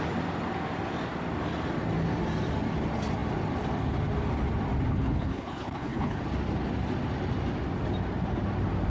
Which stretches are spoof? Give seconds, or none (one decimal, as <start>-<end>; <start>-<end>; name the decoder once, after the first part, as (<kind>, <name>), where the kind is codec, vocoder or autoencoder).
4.9-6.2 (codec, HILCodec)